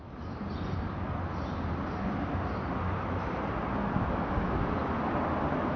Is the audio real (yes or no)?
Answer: yes